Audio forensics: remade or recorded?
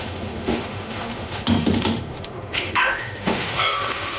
remade